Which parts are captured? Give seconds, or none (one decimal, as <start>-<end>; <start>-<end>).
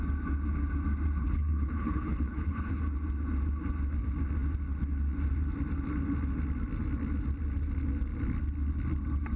0.0-1.2; 2.8-9.4